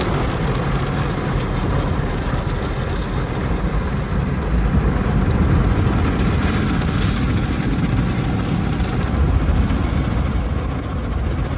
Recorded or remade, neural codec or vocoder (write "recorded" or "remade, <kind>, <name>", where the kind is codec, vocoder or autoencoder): recorded